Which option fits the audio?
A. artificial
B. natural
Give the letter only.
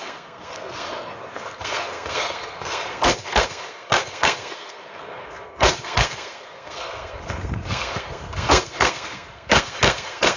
A